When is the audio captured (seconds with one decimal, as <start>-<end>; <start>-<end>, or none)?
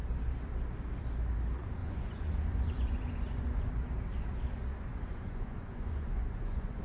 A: 0.0-1.8; 3.7-4.9